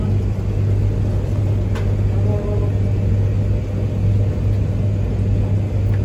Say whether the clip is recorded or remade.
recorded